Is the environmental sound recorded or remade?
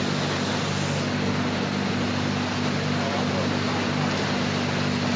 recorded